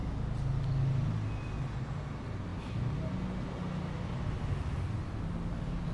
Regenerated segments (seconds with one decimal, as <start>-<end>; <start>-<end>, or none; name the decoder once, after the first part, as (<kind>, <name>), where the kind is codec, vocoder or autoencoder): none